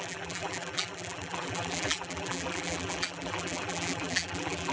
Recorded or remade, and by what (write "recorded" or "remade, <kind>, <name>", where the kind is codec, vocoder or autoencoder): remade, vocoder, BigVGAN v2